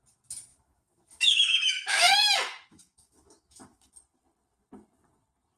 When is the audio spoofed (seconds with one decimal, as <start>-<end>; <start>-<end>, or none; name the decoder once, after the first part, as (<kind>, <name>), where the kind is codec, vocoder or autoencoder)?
0.5-3.9 (autoencoder, DAC-VAE)